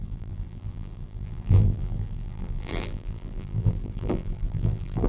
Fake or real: fake